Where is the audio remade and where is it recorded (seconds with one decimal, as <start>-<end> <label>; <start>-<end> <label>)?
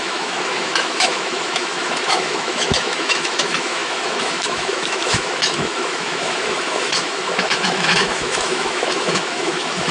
0.0-9.9 remade